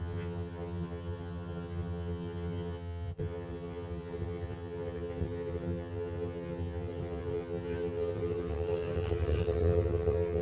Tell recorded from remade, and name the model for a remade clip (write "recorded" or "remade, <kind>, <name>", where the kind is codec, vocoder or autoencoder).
remade, vocoder, HiFi-GAN